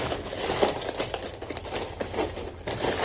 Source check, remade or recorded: recorded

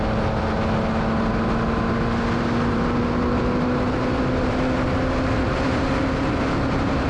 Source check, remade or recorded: recorded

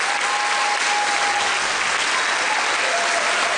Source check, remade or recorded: recorded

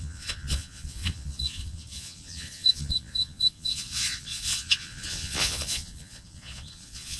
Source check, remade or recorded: remade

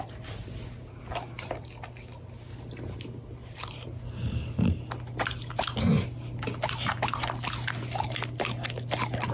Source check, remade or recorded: recorded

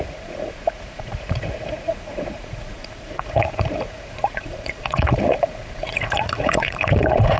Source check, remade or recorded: remade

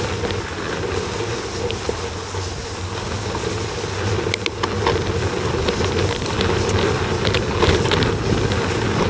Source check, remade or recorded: recorded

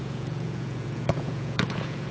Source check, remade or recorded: remade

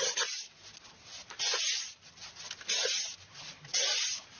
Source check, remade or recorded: recorded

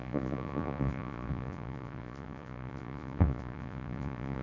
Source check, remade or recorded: remade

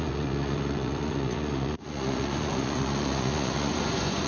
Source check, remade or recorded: remade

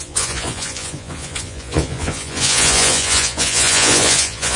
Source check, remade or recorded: remade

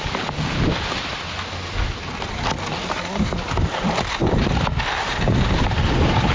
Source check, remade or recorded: recorded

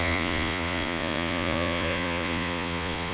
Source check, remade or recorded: remade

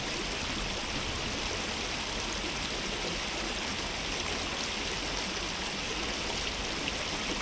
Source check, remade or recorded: recorded